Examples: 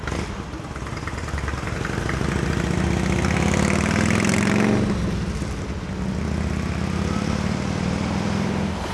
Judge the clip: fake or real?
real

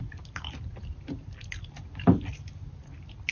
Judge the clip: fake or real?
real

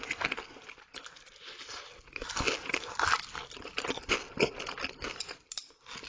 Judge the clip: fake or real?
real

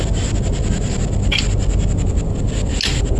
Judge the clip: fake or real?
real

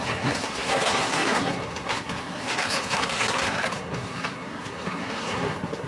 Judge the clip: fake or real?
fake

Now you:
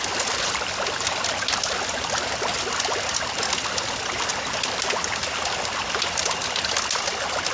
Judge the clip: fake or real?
real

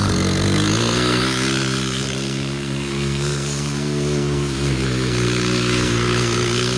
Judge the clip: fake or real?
fake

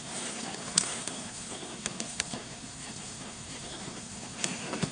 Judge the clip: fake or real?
fake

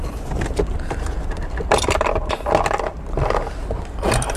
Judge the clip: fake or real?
real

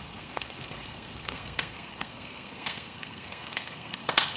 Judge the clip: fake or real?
fake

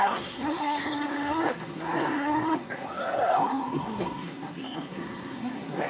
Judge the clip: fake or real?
fake